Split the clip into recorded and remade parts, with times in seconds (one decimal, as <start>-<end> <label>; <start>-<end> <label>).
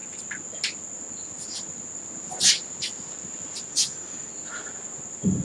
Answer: 0.0-3.7 recorded; 3.7-4.3 remade; 4.3-5.4 recorded